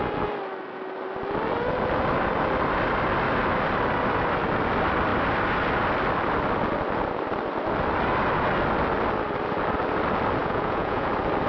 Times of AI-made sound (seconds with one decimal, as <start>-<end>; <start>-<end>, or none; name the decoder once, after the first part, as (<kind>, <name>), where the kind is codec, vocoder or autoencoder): 10.4-11.1 (vocoder, Vocos)